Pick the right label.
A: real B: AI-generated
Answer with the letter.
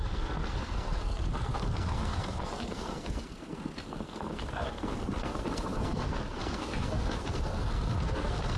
B